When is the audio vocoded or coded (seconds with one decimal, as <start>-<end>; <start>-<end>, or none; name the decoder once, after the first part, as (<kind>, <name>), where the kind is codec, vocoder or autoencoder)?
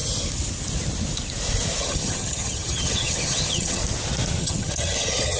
1.8-3.8 (vocoder, HiFi-GAN); 4.4-5.4